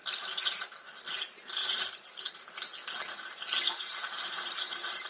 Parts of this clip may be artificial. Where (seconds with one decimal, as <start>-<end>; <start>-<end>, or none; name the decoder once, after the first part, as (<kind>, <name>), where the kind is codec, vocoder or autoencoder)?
1.0-2.7 (vocoder, BigVGAN v2); 3.5-5.1

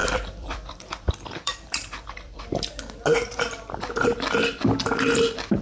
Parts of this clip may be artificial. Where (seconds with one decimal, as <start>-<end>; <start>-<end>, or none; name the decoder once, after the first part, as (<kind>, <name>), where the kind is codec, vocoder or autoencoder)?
0.0-2.4 (vocoder, BigVGAN v2)

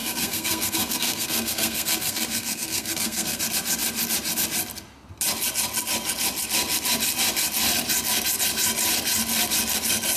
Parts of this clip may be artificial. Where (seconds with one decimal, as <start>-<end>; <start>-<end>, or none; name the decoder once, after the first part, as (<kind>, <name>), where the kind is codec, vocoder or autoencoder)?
0.0-3.4 (codec, SNAC)

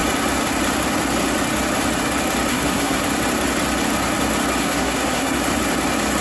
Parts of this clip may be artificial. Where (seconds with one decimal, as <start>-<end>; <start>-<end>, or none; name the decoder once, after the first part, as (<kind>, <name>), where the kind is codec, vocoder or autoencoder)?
2.5-3.0 (codec, SNAC); 4.6-5.4

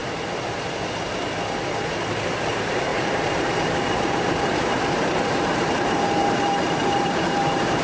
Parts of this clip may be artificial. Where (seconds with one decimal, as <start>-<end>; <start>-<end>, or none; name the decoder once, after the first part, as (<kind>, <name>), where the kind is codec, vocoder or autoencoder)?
2.5-7.8 (vocoder, BigVGAN v2)